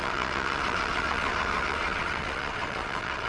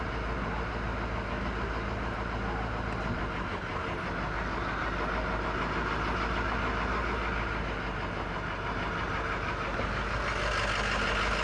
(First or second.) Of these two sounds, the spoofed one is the first